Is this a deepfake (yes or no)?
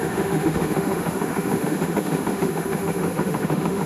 yes